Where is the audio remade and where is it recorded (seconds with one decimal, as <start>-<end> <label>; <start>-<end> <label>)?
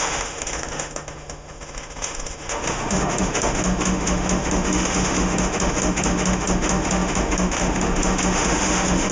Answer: 0.0-9.1 remade